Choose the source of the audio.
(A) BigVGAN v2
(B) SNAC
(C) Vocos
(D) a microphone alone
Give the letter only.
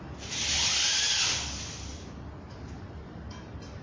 D